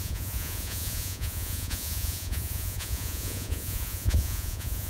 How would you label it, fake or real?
fake